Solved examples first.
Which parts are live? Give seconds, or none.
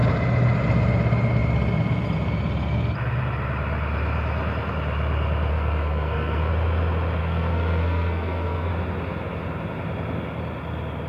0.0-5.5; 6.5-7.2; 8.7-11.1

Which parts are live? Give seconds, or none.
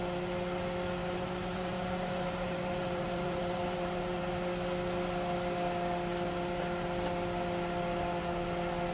0.0-1.0; 4.3-8.9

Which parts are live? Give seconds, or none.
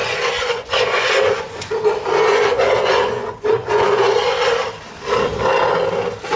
1.7-2.3; 4.2-6.4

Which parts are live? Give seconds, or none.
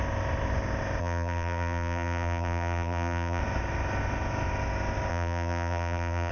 0.0-1.0; 3.4-5.1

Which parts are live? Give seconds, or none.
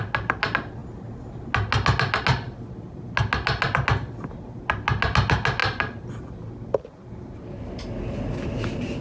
0.0-9.0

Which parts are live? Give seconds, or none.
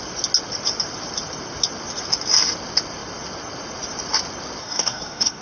0.0-4.6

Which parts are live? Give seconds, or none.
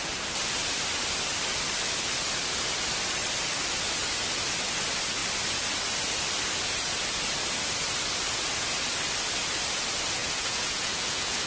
0.0-10.2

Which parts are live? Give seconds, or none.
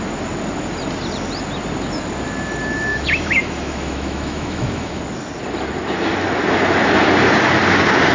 0.0-2.9; 5.0-8.1